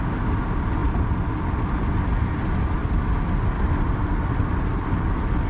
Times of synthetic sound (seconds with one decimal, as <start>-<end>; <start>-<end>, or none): none